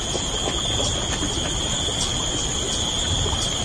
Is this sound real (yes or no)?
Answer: yes